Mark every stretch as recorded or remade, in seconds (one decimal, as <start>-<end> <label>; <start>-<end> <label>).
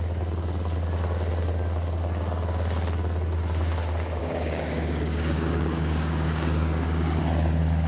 0.0-4.2 recorded; 4.2-7.2 remade; 7.2-7.9 recorded